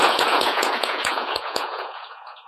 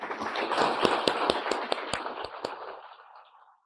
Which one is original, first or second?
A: second